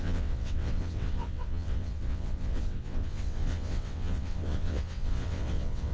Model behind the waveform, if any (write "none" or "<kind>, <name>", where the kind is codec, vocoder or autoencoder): vocoder, WaveNeXt